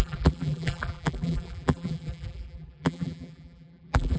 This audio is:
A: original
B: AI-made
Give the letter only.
B